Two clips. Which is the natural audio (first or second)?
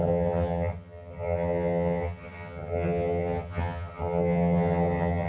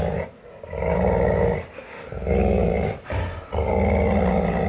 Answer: second